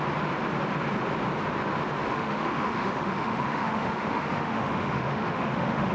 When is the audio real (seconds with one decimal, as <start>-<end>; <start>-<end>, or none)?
0.0-2.1